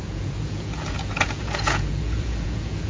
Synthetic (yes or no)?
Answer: yes